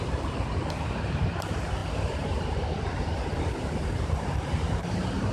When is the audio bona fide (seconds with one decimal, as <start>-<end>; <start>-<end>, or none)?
none